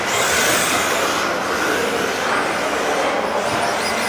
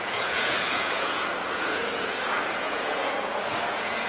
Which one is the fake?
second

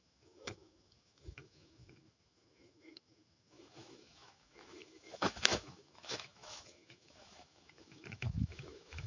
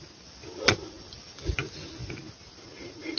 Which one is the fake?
first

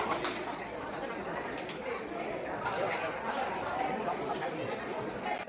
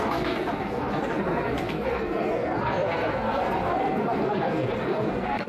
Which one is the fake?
second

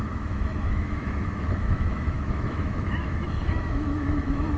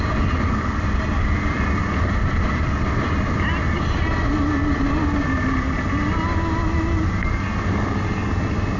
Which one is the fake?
first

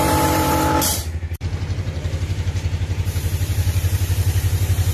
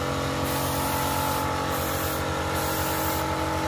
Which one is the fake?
first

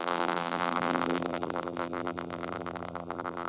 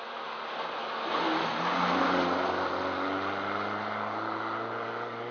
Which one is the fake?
first